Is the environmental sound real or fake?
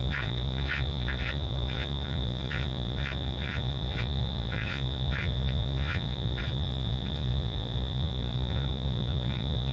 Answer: fake